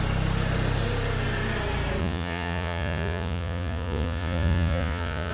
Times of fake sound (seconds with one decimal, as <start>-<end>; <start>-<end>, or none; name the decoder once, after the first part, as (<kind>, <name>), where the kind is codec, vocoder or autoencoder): 2.0-5.3 (vocoder, Vocos)